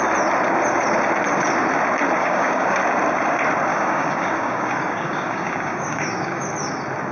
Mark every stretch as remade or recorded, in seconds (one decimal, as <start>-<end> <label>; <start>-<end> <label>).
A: 0.0-2.2 recorded; 2.2-2.8 remade; 2.8-3.7 recorded; 3.7-6.5 remade; 6.5-7.1 recorded